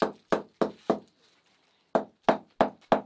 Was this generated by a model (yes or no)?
no